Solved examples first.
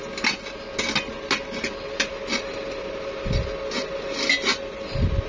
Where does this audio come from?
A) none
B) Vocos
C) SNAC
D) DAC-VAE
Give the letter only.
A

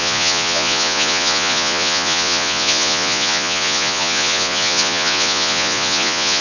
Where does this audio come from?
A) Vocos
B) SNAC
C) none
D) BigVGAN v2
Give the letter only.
A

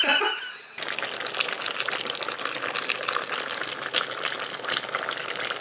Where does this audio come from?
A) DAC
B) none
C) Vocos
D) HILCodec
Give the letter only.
B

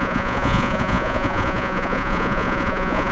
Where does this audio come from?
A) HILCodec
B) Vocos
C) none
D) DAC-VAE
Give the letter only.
B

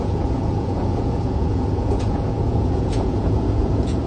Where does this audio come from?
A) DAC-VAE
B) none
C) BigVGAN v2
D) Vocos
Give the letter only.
D